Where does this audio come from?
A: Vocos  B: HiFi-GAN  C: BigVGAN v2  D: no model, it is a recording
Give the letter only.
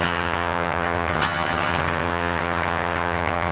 B